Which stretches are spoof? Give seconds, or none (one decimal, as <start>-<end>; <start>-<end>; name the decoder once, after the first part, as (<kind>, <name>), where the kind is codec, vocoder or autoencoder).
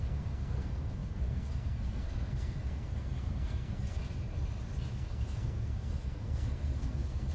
0.0-4.0 (codec, SNAC); 4.9-7.3